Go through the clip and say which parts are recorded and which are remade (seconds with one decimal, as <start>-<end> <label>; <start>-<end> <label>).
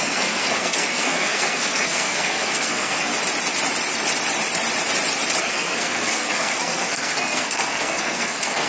0.0-3.1 remade; 3.1-5.4 recorded; 5.4-8.7 remade